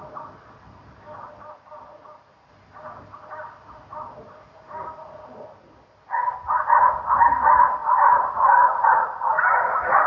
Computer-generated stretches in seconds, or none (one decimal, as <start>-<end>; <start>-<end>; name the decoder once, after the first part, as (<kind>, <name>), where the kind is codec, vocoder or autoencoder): 7.8-9.4 (vocoder, BigVGAN v2)